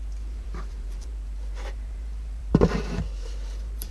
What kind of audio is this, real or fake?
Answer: fake